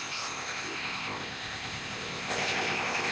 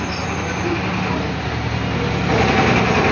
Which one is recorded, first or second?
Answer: second